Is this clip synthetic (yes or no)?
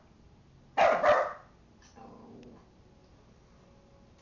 no